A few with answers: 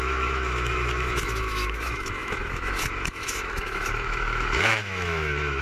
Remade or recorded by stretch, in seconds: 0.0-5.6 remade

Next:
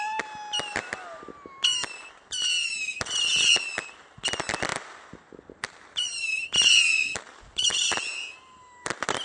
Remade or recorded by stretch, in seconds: 0.0-9.2 recorded

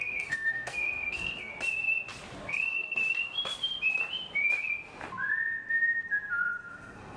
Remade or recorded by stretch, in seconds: 0.0-1.5 remade; 1.5-2.5 recorded; 2.5-3.0 remade; 3.0-6.7 recorded; 6.7-7.2 remade